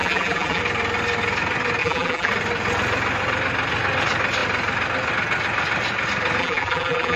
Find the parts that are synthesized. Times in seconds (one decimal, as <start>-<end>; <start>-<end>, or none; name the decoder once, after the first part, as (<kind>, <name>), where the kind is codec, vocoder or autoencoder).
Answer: 0.0-0.6 (vocoder, BigVGAN v2); 1.8-2.3; 6.4-7.2